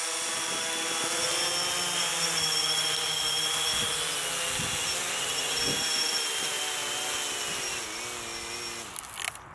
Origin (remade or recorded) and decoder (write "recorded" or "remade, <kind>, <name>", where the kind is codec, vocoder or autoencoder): recorded